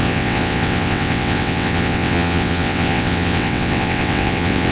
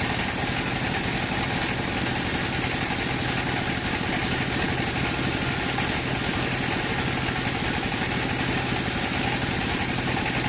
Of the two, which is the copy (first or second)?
first